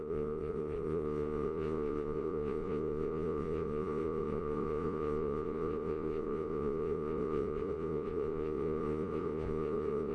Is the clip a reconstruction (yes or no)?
yes